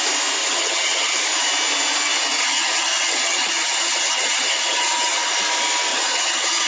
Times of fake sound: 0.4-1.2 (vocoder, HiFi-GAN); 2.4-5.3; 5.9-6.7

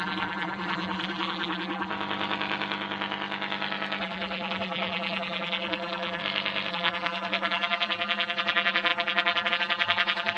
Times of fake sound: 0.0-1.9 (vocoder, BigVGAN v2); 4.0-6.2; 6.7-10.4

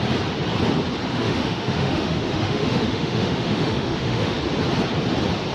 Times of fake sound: 1.1-4.4 (autoencoder, DAC-VAE)

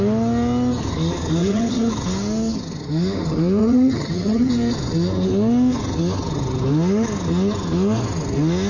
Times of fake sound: 1.4-1.9 (vocoder, HiFi-GAN); 3.6-4.5

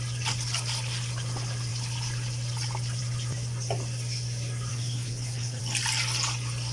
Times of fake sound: 4.7-5.6 (codec, HILCodec)